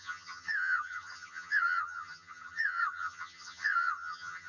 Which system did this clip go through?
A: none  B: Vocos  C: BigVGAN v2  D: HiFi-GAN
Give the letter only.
D